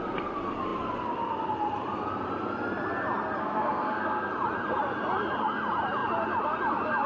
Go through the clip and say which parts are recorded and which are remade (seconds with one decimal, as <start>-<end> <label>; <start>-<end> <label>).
0.0-3.4 recorded; 3.4-4.3 remade; 4.3-7.1 recorded